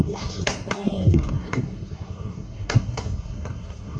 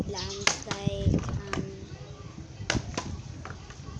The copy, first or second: first